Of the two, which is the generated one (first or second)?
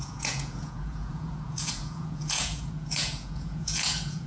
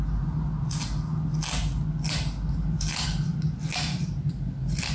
first